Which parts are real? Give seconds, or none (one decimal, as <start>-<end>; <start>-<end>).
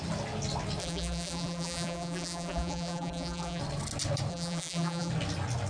0.0-0.8; 3.6-4.3; 5.1-5.7